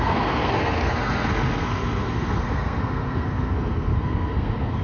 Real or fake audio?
fake